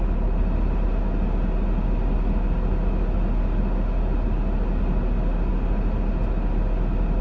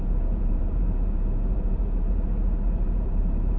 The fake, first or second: second